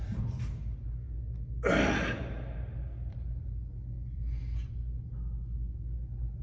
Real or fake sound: real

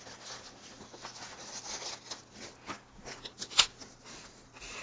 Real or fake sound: real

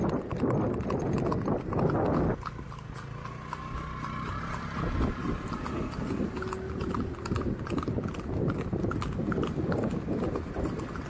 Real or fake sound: real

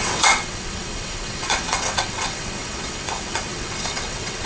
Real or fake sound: fake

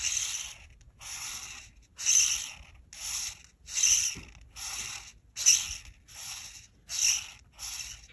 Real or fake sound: real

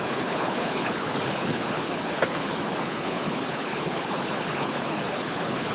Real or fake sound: fake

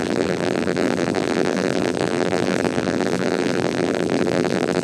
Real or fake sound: fake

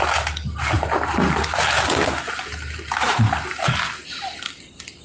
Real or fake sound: real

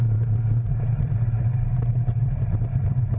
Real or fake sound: fake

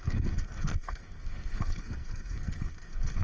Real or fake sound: fake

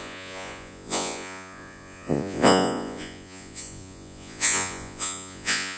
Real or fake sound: fake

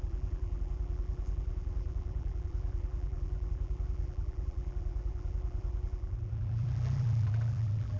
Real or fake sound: fake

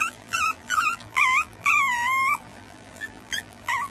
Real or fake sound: fake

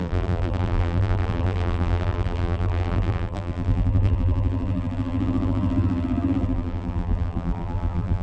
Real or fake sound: fake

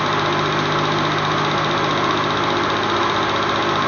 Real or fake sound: real